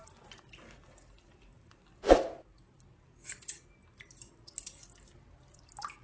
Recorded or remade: recorded